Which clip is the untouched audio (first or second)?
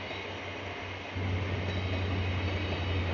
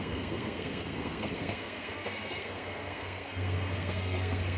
first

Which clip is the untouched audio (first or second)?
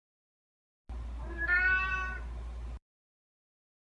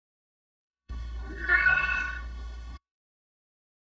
first